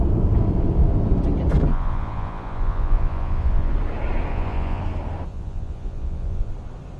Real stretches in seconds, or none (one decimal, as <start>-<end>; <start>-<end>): 0.0-1.7; 3.7-4.3; 4.8-5.3; 6.5-7.0

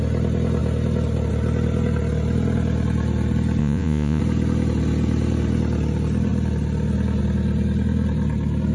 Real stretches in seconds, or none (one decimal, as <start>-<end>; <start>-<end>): 0.0-3.6; 4.2-8.7